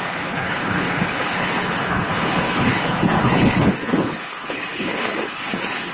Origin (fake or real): fake